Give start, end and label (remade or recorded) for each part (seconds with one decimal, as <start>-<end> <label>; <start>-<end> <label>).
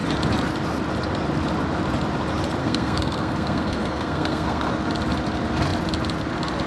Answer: 0.0-2.6 recorded; 2.6-4.7 remade; 4.7-6.7 recorded